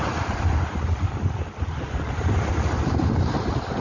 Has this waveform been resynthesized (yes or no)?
no